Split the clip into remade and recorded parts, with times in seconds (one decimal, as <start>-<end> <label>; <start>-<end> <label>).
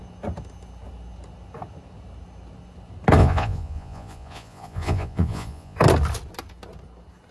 0.0-3.2 recorded; 3.2-5.8 remade; 5.8-7.3 recorded